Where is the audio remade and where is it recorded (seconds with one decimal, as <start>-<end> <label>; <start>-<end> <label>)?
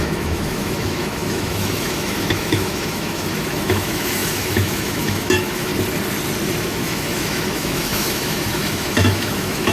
0.0-5.7 remade; 5.7-6.6 recorded; 6.6-9.7 remade